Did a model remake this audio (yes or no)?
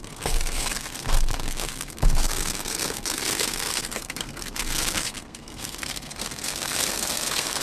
yes